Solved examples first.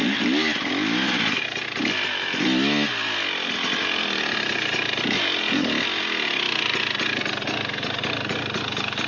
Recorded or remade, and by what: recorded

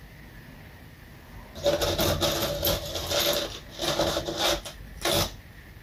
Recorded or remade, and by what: recorded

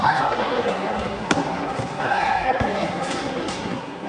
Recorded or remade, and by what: remade, codec, SNAC